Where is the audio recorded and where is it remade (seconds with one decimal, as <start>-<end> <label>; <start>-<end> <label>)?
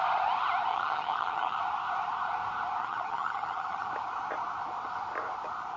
0.0-0.7 recorded; 0.7-1.6 remade; 1.6-2.8 recorded; 2.8-3.9 remade; 3.9-5.8 recorded